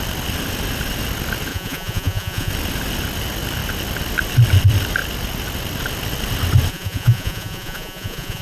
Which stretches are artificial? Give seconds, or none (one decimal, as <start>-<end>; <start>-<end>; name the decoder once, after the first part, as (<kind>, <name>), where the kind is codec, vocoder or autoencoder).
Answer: 1.5-2.5 (vocoder, Vocos); 6.7-8.4